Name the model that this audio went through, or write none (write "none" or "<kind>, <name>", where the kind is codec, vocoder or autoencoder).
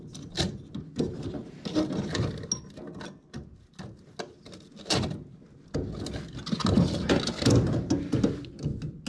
none